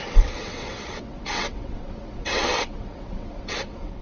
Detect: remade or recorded remade